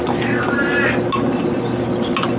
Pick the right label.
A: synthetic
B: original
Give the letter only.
B